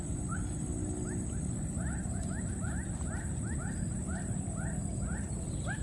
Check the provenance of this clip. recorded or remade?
recorded